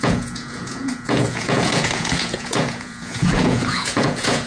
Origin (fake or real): fake